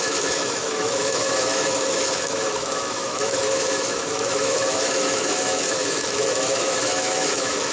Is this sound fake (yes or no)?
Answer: yes